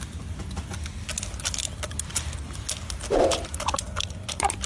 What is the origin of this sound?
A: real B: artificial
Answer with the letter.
A